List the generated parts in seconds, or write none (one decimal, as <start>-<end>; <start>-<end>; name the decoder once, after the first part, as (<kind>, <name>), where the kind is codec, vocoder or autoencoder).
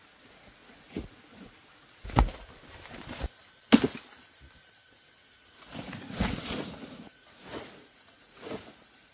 0.0-2.3 (vocoder, Vocos); 5.2-9.1